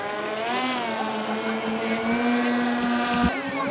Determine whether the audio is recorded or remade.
recorded